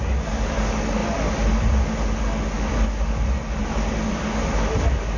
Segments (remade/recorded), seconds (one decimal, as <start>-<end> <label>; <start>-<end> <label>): 0.0-5.2 recorded